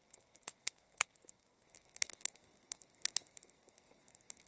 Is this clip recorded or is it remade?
remade